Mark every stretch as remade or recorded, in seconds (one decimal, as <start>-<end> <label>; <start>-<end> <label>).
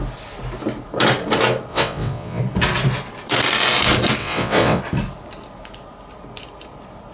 0.0-1.7 recorded; 1.7-2.4 remade; 2.4-4.2 recorded; 4.2-4.8 remade; 4.8-7.1 recorded